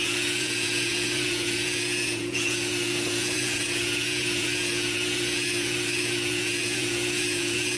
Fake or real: fake